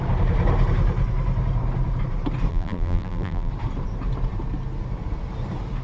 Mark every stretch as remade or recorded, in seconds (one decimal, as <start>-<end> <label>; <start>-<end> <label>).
0.0-2.5 recorded; 2.5-3.5 remade; 3.5-5.8 recorded